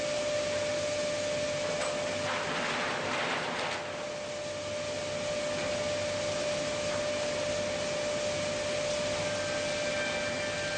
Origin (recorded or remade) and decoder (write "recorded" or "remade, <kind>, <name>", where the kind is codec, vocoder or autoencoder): recorded